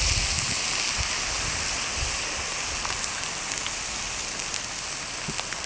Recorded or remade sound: recorded